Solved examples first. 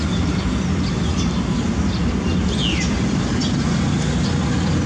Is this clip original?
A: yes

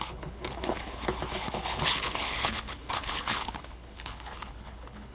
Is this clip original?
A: no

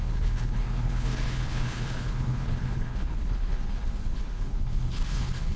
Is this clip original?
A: no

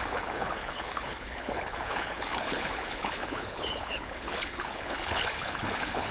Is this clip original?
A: no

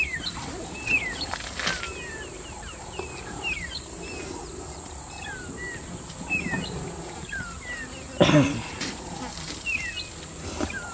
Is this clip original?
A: yes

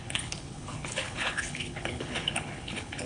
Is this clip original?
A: no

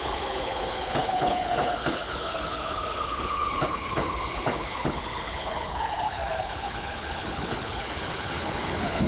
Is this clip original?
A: no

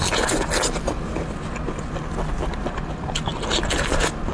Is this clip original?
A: yes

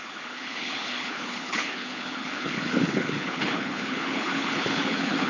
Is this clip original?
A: no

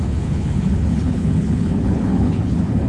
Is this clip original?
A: no